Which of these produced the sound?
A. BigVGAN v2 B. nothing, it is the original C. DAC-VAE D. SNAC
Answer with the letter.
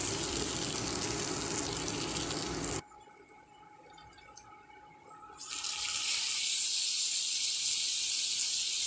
B